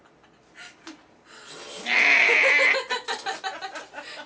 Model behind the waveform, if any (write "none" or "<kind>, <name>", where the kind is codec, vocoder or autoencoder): none